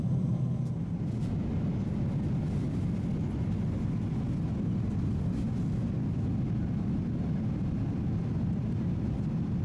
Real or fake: real